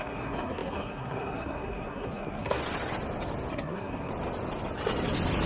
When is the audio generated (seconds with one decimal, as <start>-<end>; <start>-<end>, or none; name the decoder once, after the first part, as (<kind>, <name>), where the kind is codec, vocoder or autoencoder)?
0.0-2.6 (codec, SNAC); 3.5-4.1